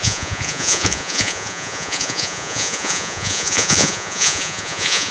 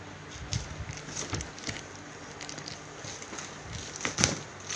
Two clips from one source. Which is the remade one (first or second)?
first